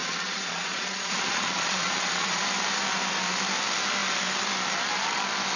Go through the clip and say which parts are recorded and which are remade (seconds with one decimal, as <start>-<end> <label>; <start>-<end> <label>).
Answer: 0.0-2.4 remade; 2.4-5.6 recorded

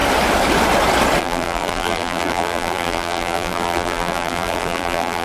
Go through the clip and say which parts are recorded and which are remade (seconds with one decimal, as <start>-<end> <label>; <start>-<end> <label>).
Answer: 0.0-1.2 recorded; 1.2-5.2 remade

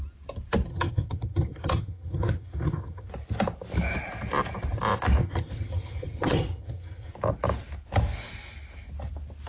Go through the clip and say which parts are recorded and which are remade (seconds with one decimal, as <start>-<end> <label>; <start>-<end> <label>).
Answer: 0.0-0.7 recorded; 0.7-3.1 remade; 3.1-5.2 recorded; 5.2-7.1 remade; 7.1-9.5 recorded

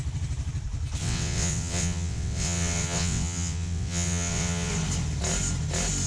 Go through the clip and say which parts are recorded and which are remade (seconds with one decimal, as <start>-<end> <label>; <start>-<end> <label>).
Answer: 0.0-1.0 recorded; 1.0-4.7 remade; 4.7-6.1 recorded